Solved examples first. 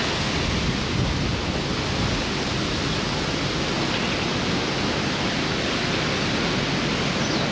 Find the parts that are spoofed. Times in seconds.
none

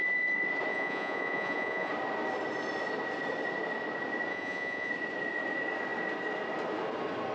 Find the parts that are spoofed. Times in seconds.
0.7-1.9 (vocoder, Vocos); 4.3-4.9

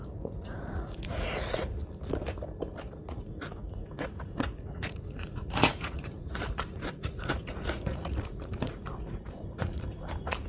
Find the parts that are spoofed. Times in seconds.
0.0-1.7 (vocoder, Vocos); 3.1-10.5

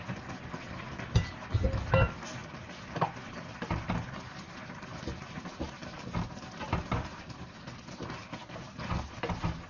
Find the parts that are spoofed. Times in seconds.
none

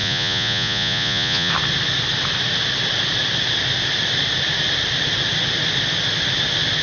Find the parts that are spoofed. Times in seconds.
0.0-1.5 (vocoder, Vocos)

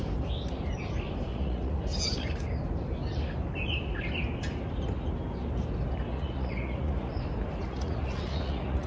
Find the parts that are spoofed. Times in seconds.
1.3-1.8 (vocoder, Vocos); 6.1-7.1; 7.6-8.9

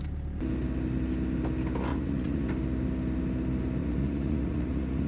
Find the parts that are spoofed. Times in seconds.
1.9-2.5 (vocoder, Vocos); 3.8-5.1